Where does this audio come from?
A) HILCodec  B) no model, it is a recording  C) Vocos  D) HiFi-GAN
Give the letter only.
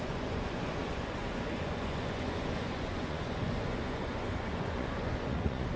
C